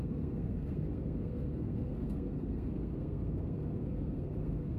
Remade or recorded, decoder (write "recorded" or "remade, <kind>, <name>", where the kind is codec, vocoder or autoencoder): remade, codec, SNAC